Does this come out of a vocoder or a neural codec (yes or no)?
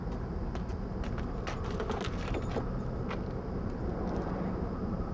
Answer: no